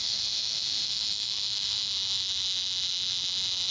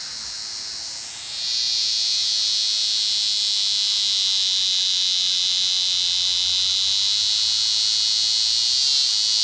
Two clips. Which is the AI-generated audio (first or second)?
first